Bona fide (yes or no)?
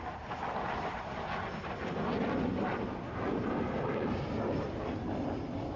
yes